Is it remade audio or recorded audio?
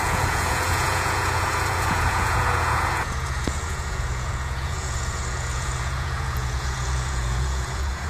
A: remade